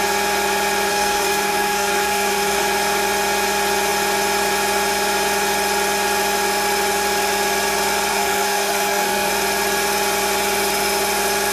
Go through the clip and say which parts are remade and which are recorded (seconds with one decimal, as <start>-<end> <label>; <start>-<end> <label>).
0.0-0.9 recorded; 0.9-2.6 remade; 2.6-8.1 recorded; 8.1-9.3 remade; 9.3-11.5 recorded